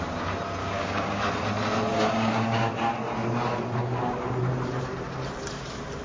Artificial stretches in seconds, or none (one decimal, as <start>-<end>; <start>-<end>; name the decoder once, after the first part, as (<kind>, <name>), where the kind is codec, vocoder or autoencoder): 0.6-1.2 (codec, DAC); 1.9-2.7